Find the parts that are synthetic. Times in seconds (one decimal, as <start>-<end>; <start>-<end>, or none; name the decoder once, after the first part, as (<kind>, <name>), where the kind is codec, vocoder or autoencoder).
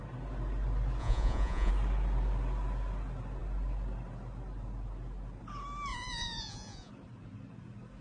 1.0-1.7 (vocoder, Vocos); 5.9-6.9